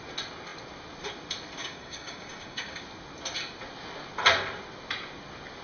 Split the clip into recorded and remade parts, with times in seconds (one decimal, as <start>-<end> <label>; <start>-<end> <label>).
0.0-1.6 recorded; 1.6-2.8 remade; 2.8-5.6 recorded